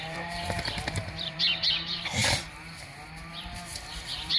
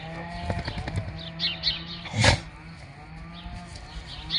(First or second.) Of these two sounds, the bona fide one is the second